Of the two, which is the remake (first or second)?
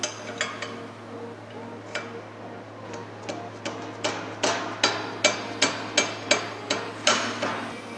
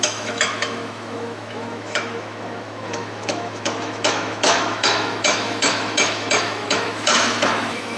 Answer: second